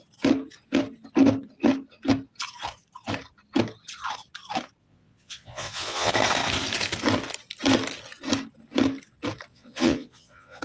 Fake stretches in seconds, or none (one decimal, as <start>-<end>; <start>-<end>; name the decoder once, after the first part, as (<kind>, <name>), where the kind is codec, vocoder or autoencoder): 4.8-6.1 (vocoder, Vocos); 9.5-10.6